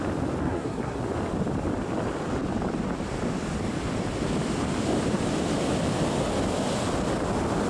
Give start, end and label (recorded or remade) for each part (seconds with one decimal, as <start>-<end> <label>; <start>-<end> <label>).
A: 0.0-0.4 recorded; 0.4-1.0 remade; 1.0-7.7 recorded